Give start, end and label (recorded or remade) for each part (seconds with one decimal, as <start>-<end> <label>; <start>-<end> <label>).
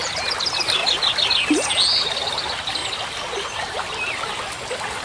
0.0-5.0 recorded